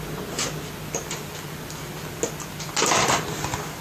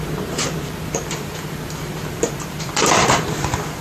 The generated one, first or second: second